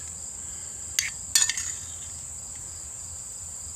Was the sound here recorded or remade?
recorded